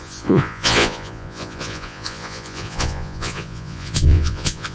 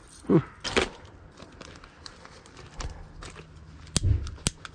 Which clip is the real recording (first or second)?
second